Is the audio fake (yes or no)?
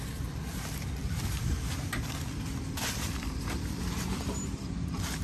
yes